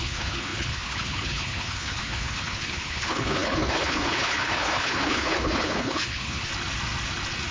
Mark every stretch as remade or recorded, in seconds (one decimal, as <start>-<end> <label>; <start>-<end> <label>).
0.0-6.5 remade; 6.5-7.5 recorded